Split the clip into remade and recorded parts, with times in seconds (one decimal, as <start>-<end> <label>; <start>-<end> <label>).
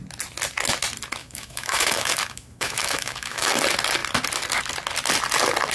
0.0-1.2 recorded; 1.2-3.5 remade; 3.5-5.7 recorded